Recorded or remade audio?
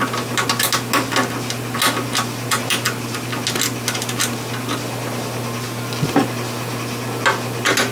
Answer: recorded